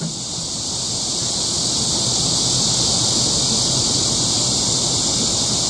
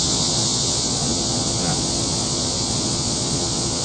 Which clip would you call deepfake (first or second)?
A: second